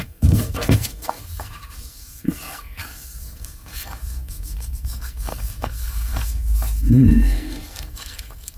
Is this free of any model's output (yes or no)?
no